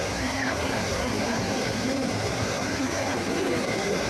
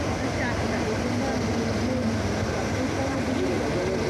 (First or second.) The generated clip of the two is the first